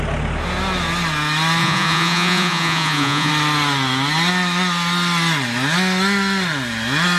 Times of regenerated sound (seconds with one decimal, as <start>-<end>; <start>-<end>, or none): 1.6-3.3